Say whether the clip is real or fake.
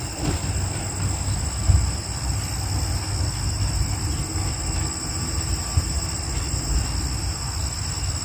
real